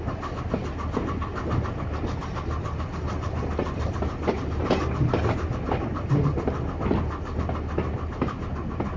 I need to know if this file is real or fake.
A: real